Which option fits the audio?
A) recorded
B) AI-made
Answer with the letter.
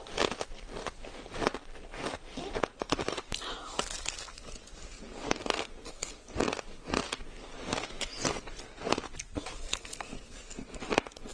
A